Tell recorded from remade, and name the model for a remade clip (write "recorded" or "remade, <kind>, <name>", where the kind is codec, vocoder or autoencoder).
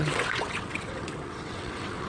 remade, vocoder, WaveNeXt